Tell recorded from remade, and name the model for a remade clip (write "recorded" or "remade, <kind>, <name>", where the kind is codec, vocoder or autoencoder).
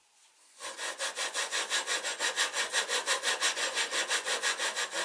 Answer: remade, vocoder, Vocos